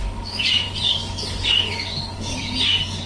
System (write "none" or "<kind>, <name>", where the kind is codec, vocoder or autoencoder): codec, DAC